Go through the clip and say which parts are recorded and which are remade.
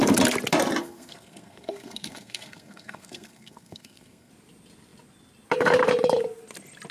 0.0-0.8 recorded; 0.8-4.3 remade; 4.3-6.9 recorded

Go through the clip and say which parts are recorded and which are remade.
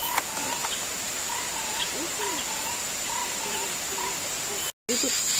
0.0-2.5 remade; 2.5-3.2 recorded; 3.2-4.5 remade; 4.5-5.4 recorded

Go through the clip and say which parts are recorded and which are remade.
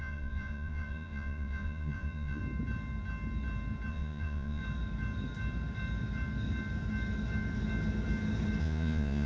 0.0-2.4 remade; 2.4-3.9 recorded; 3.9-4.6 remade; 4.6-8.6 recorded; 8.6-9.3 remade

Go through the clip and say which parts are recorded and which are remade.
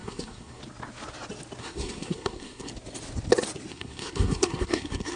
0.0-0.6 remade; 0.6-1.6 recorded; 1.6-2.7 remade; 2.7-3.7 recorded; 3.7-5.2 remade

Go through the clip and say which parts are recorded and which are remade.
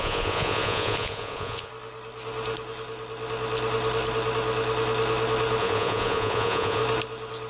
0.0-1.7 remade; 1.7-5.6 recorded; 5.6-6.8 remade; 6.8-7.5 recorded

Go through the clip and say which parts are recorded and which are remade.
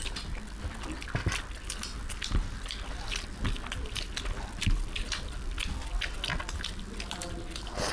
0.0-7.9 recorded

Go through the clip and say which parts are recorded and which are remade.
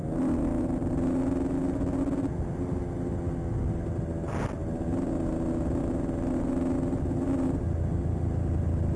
0.0-9.0 recorded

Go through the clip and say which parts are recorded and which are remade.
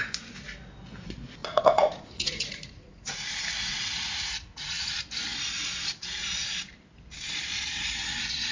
0.0-1.4 recorded; 1.4-4.9 remade; 4.9-8.5 recorded